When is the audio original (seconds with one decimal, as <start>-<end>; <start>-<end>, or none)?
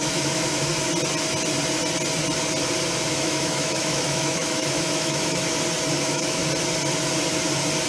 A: 0.7-3.1; 5.4-6.0; 6.4-7.9